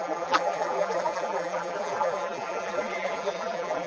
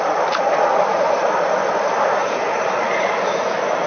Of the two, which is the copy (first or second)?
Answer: first